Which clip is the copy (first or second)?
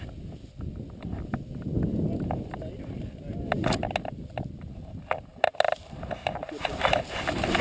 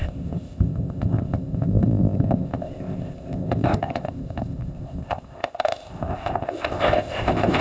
second